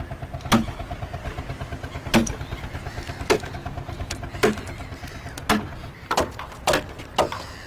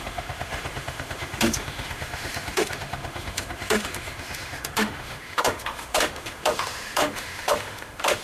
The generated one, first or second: second